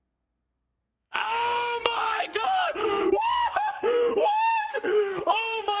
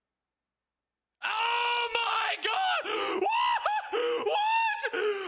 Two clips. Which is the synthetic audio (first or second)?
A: first